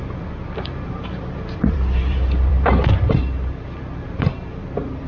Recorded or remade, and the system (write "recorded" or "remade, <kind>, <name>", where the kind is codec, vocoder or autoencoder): remade, vocoder, BigVGAN v2